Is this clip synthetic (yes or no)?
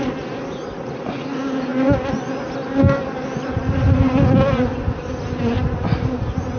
no